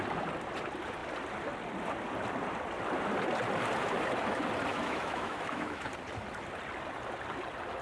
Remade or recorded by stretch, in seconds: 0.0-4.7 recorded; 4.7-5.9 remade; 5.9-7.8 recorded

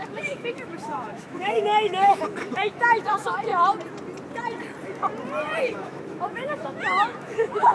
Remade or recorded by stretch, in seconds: 0.0-3.5 remade; 3.5-5.6 recorded; 5.6-7.7 remade

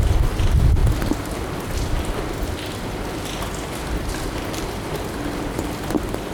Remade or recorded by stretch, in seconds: 0.0-6.3 recorded

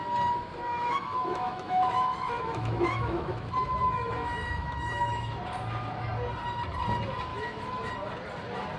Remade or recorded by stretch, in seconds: 0.0-0.7 recorded; 0.7-5.4 remade; 5.4-7.3 recorded; 7.3-7.9 remade; 7.9-8.8 recorded

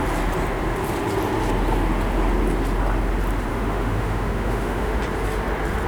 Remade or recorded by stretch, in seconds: 0.0-3.5 recorded; 3.5-5.0 remade; 5.0-5.9 recorded